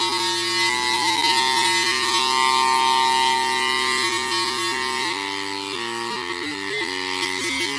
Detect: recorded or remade recorded